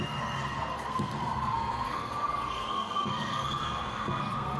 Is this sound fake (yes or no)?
yes